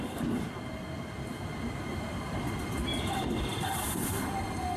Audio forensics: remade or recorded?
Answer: recorded